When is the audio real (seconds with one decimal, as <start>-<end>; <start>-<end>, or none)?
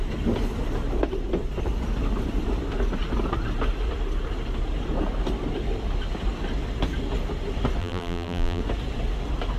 0.0-7.8; 8.6-9.6